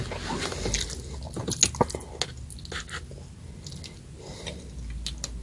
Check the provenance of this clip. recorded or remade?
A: recorded